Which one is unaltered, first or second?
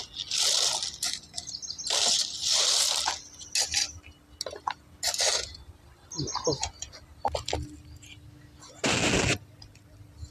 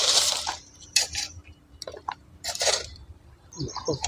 first